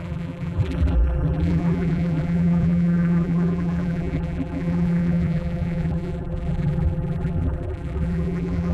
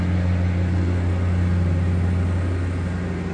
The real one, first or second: second